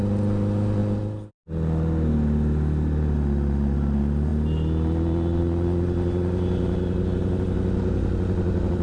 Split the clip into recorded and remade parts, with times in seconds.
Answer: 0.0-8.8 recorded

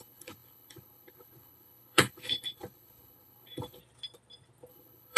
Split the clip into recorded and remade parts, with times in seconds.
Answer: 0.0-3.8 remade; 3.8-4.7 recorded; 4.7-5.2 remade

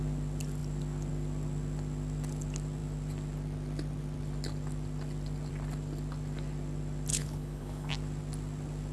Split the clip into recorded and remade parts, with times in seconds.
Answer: 0.0-7.1 recorded; 7.1-7.9 remade; 7.9-8.9 recorded